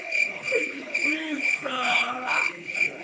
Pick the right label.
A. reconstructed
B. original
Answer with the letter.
A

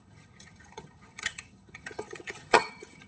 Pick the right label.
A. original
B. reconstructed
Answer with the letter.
B